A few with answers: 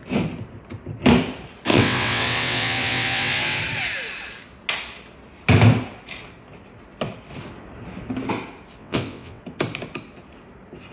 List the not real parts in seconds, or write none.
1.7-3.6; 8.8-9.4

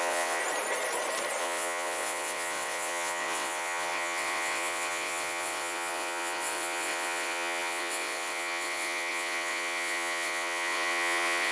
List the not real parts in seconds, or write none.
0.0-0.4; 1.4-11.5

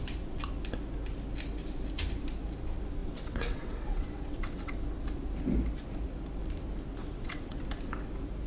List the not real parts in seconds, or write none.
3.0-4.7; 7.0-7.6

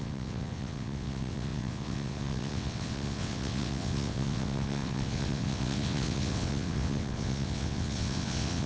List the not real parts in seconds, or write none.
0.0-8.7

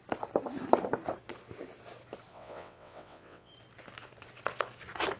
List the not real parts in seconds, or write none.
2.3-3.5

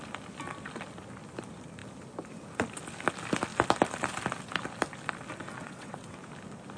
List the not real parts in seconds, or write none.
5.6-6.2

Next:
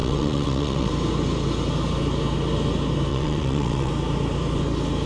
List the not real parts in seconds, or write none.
0.0-0.9; 3.1-3.9